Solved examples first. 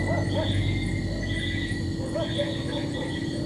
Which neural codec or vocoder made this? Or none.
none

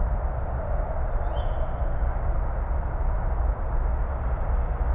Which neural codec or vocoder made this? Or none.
none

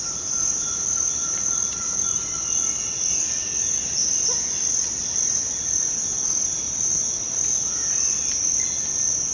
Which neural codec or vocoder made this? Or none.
none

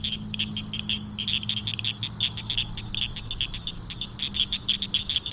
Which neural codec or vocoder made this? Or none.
none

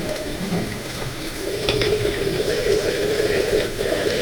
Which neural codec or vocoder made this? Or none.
autoencoder, DAC-VAE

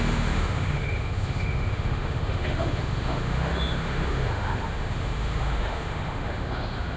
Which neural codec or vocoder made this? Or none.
autoencoder, DAC-VAE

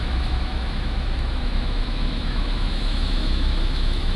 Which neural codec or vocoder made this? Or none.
autoencoder, DAC-VAE